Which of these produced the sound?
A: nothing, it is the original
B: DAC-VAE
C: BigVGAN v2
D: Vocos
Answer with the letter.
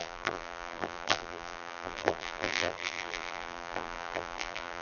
C